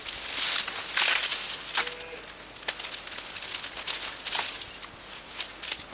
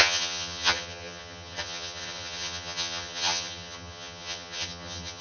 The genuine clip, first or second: first